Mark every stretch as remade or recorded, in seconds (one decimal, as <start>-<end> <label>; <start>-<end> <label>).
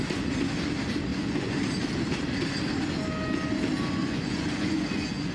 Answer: 0.0-1.1 recorded; 1.1-1.6 remade; 1.6-4.0 recorded; 4.0-5.3 remade